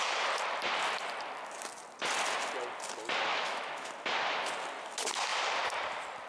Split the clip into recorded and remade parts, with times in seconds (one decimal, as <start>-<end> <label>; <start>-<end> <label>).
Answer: 0.0-3.3 recorded; 3.3-3.9 remade; 3.9-6.3 recorded